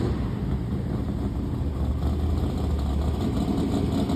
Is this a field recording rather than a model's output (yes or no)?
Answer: yes